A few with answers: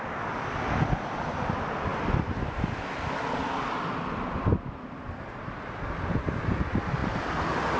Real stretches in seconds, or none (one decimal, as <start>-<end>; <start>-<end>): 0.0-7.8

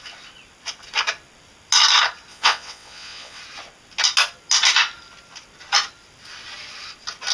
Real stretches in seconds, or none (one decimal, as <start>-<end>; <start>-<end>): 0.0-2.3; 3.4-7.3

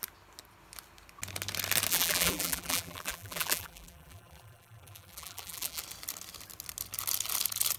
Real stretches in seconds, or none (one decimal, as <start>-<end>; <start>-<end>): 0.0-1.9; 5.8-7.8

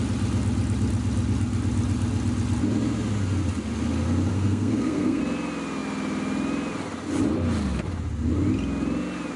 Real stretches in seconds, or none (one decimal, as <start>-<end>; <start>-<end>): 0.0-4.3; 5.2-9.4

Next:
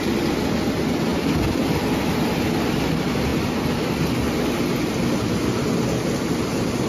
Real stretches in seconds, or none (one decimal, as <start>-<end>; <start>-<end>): 0.0-6.9